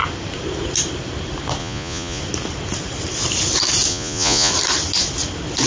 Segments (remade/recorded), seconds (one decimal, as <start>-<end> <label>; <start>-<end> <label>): 0.0-1.6 recorded; 1.6-2.2 remade; 2.2-3.9 recorded; 3.9-4.5 remade; 4.5-5.7 recorded